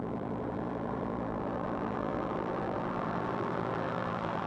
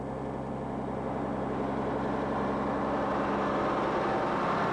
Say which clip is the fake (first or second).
first